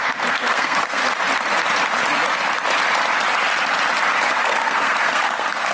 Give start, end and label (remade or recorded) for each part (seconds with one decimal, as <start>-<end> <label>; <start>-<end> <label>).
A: 0.0-1.0 remade; 1.0-4.4 recorded; 4.4-5.7 remade